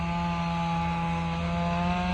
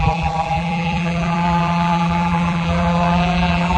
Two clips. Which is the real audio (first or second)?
first